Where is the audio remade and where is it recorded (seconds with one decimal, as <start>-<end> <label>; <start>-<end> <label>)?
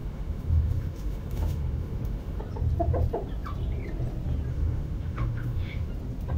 0.0-2.4 remade; 2.4-4.5 recorded; 4.5-5.9 remade; 5.9-6.4 recorded